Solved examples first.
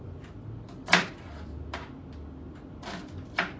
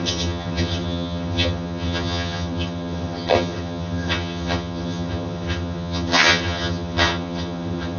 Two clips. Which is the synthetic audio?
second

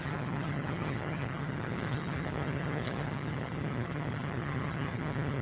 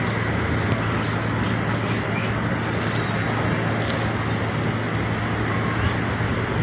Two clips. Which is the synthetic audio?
first